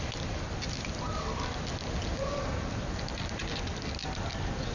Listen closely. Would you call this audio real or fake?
real